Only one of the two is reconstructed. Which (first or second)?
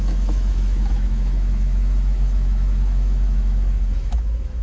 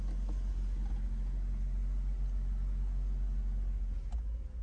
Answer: first